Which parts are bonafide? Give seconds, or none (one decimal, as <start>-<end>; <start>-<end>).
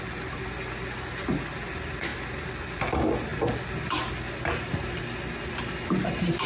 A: 0.0-6.5